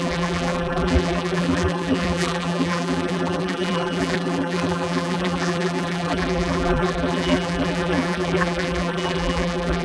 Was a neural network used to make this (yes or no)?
yes